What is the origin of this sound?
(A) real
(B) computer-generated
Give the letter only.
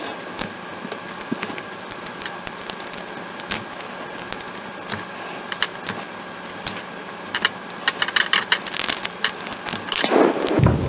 A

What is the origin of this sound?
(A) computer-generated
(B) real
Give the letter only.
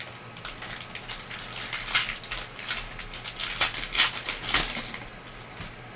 B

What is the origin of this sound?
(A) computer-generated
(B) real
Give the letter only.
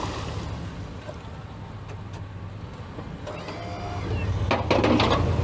B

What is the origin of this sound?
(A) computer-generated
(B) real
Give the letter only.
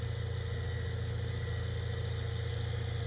B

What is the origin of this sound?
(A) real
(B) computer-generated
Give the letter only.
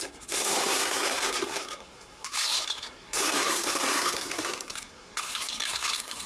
B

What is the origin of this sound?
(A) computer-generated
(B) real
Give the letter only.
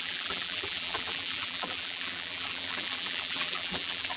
A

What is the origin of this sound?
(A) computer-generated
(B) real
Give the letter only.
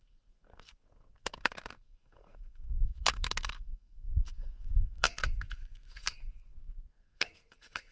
A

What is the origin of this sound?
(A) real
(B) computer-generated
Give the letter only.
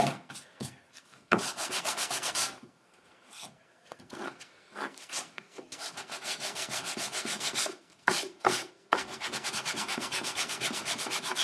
B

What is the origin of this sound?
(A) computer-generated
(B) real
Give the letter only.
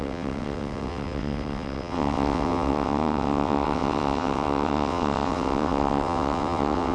A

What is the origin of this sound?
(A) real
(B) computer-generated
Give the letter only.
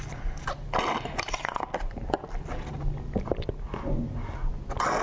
A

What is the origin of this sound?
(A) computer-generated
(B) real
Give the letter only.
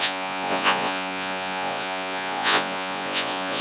A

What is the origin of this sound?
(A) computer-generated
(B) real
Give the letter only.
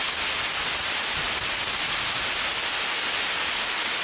B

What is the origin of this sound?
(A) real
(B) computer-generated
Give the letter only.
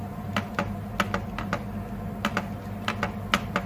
A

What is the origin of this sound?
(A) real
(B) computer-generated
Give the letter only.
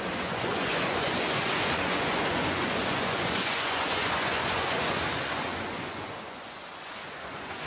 B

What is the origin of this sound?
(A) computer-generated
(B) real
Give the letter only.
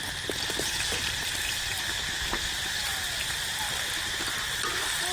B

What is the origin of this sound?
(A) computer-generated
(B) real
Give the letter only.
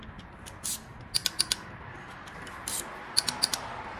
B